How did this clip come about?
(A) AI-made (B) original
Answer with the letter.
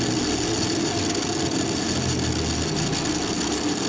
B